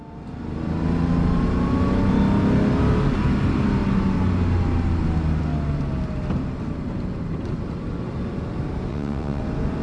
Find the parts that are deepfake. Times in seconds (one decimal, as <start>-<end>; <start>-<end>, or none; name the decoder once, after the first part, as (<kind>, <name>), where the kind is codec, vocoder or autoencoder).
8.9-9.4 (vocoder, WaveNeXt)